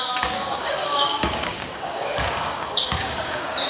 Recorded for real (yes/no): no